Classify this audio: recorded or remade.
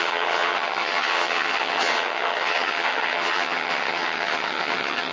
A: remade